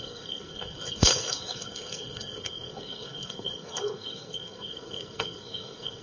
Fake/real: fake